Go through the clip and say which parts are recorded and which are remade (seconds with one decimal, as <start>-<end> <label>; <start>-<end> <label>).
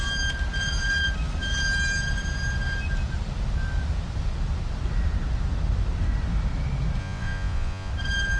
0.0-7.0 recorded; 7.0-7.9 remade; 7.9-8.4 recorded